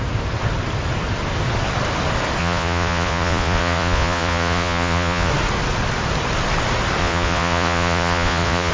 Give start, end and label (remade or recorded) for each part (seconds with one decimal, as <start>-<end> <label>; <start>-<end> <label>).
0.0-2.4 recorded; 2.4-5.3 remade; 5.3-7.0 recorded; 7.0-8.7 remade